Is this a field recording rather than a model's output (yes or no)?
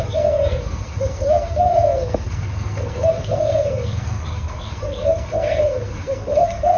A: no